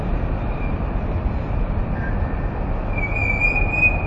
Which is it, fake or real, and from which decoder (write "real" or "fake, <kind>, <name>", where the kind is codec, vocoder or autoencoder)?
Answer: real